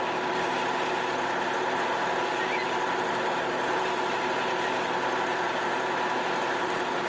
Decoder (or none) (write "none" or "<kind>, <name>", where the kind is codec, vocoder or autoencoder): none